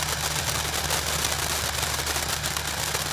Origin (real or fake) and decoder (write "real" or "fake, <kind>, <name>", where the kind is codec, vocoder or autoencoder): real